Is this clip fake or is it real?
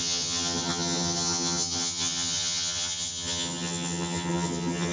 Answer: fake